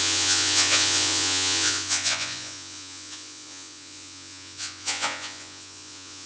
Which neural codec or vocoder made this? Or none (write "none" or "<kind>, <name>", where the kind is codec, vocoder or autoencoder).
vocoder, Vocos